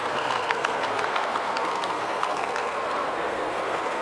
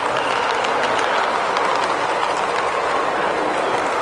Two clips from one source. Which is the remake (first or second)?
first